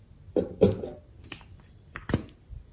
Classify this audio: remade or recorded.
recorded